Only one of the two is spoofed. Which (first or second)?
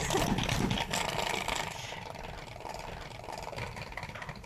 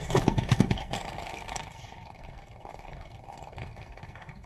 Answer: second